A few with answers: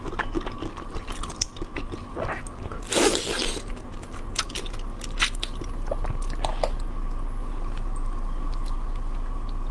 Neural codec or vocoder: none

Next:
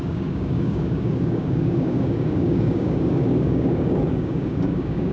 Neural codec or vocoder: codec, DAC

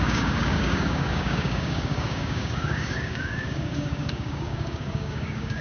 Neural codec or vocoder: codec, DAC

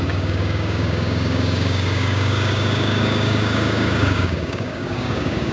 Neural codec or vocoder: codec, DAC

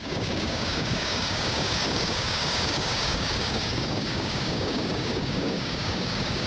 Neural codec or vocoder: codec, DAC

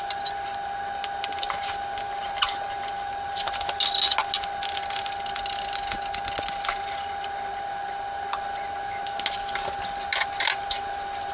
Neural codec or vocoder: none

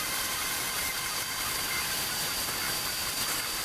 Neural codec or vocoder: none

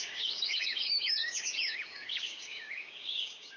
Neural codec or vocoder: codec, DAC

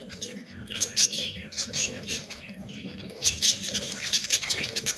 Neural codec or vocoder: codec, DAC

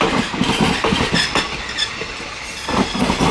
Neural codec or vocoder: none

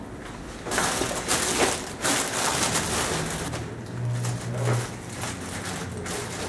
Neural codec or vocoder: none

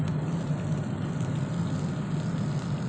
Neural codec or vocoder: none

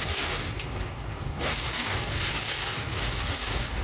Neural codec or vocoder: codec, DAC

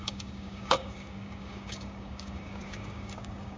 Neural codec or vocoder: codec, DAC